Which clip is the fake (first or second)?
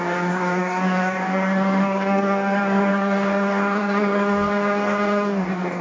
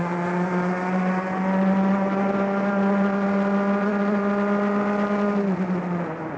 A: first